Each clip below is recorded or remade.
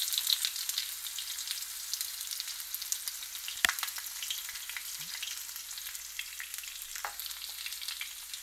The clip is recorded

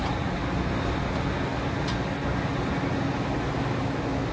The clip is recorded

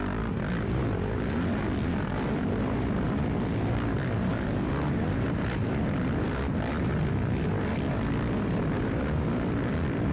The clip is recorded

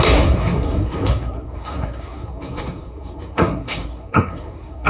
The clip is remade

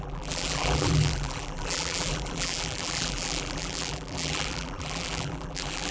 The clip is remade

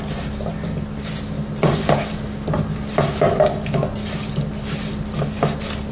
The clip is recorded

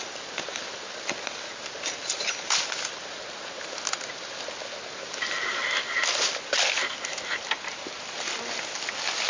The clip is recorded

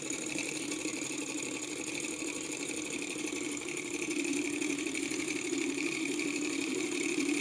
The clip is remade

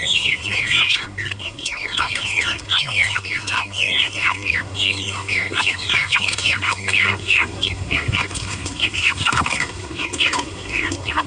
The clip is remade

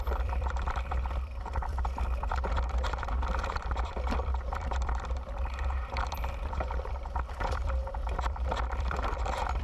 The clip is remade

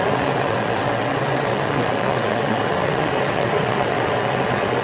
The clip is remade